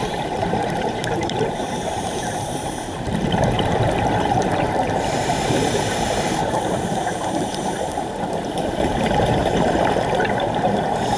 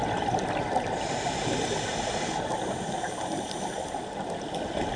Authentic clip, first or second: second